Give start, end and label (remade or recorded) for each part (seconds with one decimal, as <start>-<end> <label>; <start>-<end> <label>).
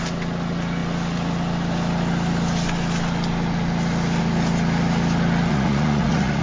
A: 0.0-5.5 recorded; 5.5-6.4 remade